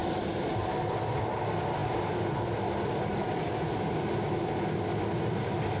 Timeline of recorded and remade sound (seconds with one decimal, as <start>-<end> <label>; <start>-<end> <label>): 0.0-5.8 recorded